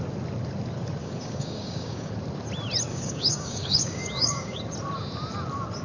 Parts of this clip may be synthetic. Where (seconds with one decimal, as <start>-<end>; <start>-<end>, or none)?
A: 1.0-2.1; 2.9-4.6